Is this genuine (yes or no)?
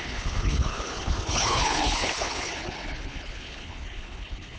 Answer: no